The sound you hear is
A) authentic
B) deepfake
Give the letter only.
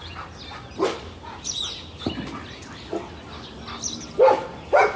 A